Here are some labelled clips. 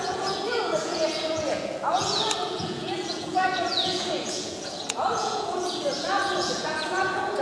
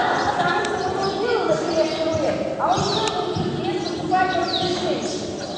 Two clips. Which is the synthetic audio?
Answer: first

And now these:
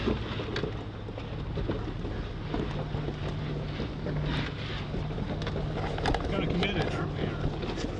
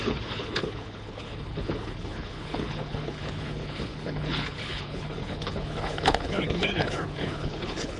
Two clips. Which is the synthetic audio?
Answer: second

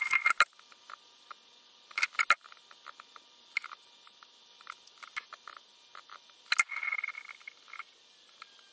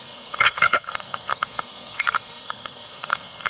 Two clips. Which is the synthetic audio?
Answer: second